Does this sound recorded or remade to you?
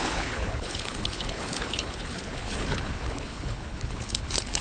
remade